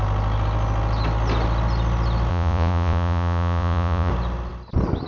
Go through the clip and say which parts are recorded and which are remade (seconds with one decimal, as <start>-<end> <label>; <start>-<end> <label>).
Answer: 0.0-2.3 recorded; 2.3-4.1 remade; 4.1-5.1 recorded